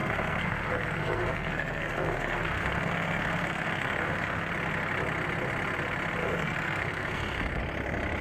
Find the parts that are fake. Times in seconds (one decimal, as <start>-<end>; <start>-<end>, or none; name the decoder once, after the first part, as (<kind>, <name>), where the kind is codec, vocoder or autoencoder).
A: 0.0-4.5 (codec, SNAC); 6.2-7.6